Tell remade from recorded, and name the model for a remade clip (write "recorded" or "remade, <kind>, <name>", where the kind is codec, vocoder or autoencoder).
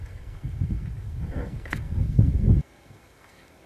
remade, codec, SNAC